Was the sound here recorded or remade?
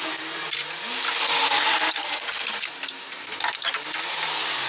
recorded